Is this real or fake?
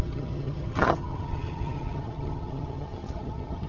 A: fake